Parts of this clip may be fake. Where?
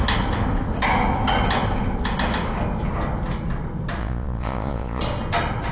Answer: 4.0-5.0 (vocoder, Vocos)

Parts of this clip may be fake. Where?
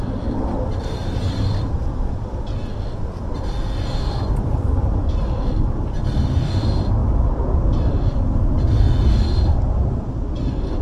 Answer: none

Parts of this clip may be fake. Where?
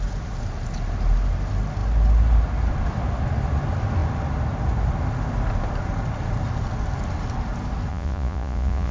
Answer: 7.9-8.9 (vocoder, Vocos)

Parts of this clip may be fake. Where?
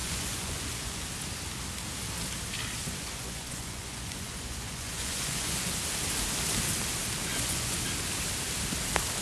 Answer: 0.0-1.0 (vocoder, Vocos); 2.8-5.7; 7.3-7.8